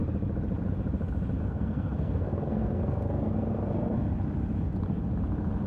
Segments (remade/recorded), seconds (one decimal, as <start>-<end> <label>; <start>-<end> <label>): 0.0-1.4 recorded; 1.4-4.1 remade; 4.1-5.7 recorded